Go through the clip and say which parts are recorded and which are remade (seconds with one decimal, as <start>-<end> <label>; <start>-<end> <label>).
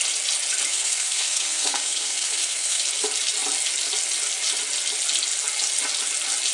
0.0-0.7 recorded; 0.7-2.8 remade; 2.8-6.5 recorded